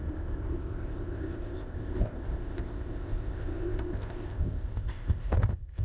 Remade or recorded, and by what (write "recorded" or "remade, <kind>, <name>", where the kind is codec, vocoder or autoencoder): remade, codec, ZipCodec